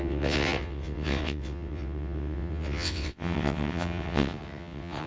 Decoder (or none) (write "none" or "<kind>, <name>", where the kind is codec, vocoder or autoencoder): vocoder, WaveNeXt